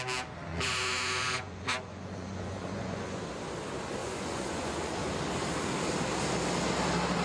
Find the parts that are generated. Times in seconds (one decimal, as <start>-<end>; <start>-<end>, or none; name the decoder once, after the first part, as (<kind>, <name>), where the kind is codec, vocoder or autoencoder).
0.5-3.2 (vocoder, Vocos); 4.0-5.0